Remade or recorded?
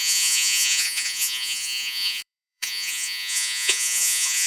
remade